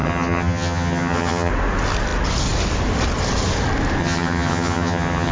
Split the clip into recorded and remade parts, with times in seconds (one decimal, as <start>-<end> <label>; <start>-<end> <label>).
0.0-1.5 remade; 1.5-4.0 recorded; 4.0-5.3 remade